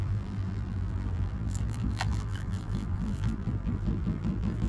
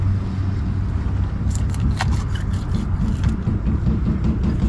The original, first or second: second